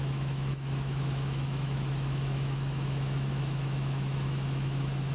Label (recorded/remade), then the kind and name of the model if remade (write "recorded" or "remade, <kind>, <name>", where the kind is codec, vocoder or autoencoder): remade, autoencoder, DAC-VAE